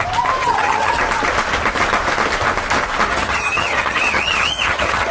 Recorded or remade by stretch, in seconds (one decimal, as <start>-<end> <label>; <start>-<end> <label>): 0.0-0.4 recorded; 0.4-1.0 remade; 1.0-3.1 recorded; 3.1-5.1 remade